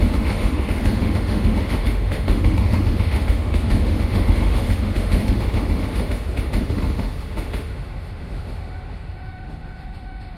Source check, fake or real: fake